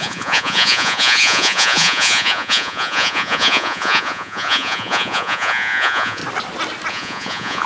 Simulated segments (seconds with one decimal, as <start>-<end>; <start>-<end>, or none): 0.0-6.2; 6.9-7.7